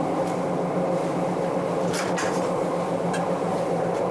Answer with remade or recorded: recorded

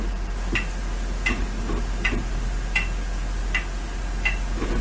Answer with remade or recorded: remade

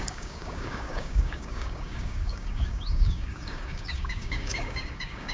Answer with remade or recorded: remade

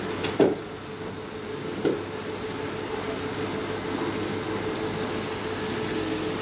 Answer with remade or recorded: recorded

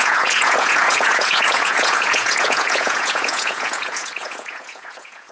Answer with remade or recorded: remade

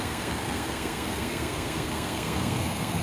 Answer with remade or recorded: remade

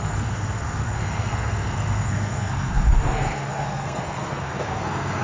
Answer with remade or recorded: remade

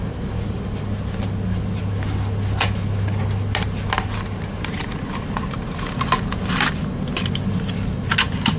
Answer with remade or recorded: recorded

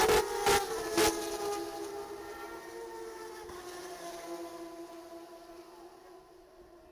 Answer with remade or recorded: recorded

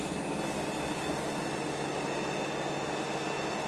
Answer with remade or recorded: recorded